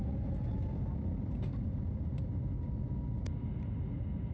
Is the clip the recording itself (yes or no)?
yes